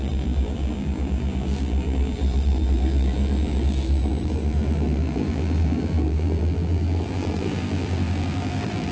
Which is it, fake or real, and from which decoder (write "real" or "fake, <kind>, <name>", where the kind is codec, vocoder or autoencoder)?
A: fake, vocoder, BigVGAN v2